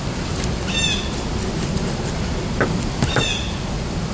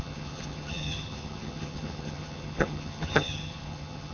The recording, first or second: first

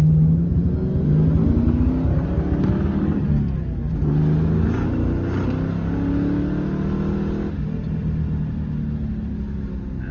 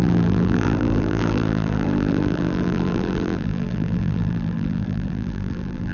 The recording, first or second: first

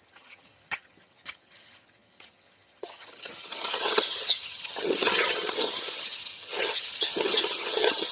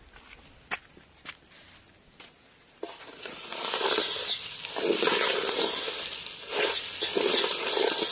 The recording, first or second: second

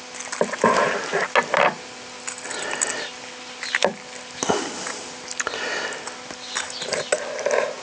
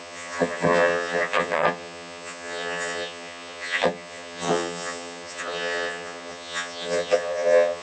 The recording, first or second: first